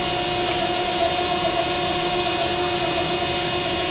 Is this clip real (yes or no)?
yes